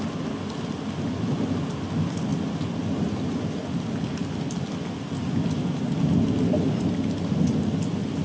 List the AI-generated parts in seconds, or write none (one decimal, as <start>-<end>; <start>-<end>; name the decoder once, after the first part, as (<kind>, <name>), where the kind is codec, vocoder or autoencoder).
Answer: none